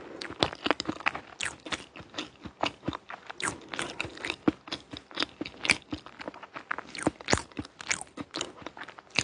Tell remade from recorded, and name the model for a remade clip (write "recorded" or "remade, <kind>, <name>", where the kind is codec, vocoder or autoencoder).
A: recorded